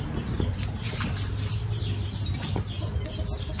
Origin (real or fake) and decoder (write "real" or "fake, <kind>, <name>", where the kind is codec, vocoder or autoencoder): real